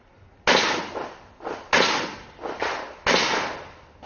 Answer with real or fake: real